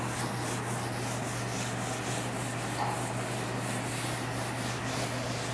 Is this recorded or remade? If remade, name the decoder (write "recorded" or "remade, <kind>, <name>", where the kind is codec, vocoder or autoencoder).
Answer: recorded